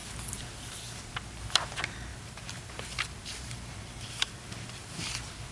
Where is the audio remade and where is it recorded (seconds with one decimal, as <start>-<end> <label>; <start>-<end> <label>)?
0.0-2.1 recorded; 2.1-4.9 remade; 4.9-5.5 recorded